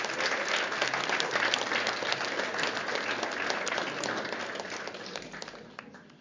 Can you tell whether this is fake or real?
real